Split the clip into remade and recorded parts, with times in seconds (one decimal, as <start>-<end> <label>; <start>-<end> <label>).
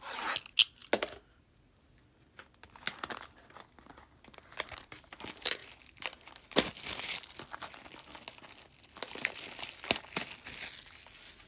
0.0-11.5 recorded